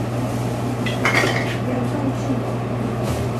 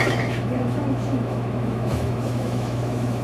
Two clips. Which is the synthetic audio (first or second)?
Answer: second